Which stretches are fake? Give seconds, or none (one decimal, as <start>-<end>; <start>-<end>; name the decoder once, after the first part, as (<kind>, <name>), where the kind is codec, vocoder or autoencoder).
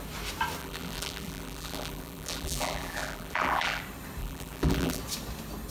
0.6-3.8 (vocoder, BigVGAN v2); 4.2-5.0